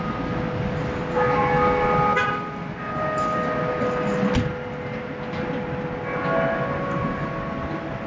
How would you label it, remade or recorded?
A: recorded